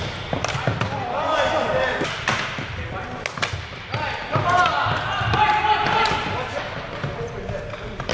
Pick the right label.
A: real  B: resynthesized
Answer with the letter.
A